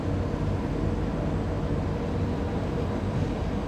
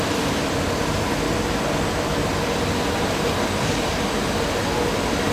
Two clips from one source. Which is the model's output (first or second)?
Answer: second